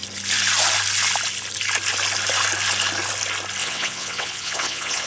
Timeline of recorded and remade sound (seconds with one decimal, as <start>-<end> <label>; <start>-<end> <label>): 0.0-3.6 recorded; 3.6-5.1 remade